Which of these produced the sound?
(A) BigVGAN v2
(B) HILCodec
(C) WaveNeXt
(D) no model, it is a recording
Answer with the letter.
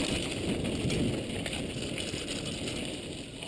D